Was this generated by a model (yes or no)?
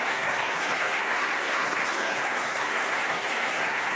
yes